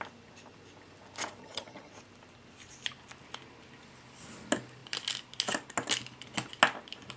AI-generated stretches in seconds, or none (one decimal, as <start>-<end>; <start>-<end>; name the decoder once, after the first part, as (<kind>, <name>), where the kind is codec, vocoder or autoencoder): 1.4-1.9 (vocoder, HiFi-GAN)